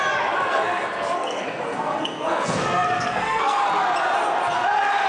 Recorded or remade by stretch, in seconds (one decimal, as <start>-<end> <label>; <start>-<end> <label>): 0.0-0.5 recorded; 0.5-3.6 remade; 3.6-5.1 recorded